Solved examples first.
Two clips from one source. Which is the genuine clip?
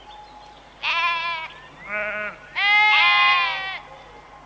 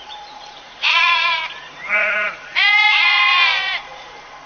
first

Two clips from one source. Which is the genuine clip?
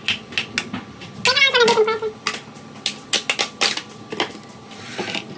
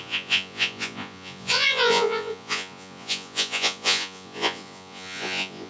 first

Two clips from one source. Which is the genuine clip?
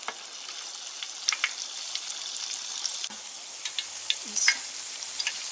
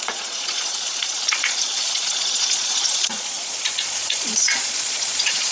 first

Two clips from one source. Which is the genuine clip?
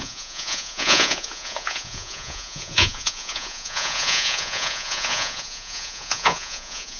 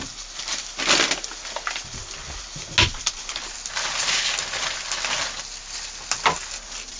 second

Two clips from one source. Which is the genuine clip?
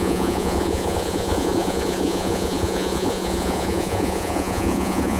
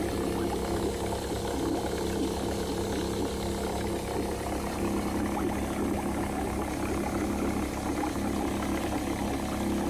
second